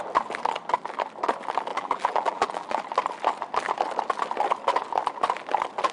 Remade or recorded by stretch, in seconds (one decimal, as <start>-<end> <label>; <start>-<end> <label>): 0.0-1.7 recorded; 1.7-2.8 remade; 2.8-5.9 recorded